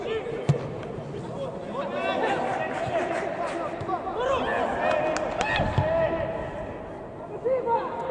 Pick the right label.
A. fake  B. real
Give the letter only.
B